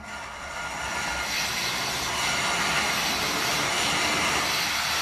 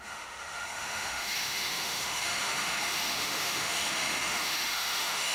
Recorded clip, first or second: first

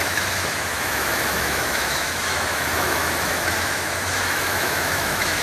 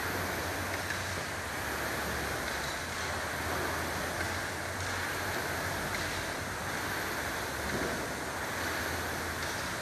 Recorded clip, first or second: second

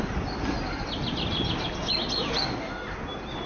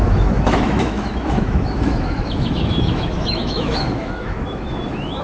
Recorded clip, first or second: first